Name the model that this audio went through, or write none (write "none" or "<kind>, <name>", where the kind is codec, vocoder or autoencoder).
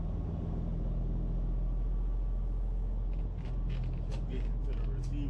none